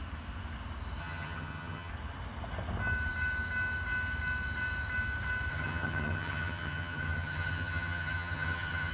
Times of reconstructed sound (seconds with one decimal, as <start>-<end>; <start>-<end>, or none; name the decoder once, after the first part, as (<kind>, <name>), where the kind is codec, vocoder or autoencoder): 1.0-1.9 (vocoder, HiFi-GAN); 5.5-8.9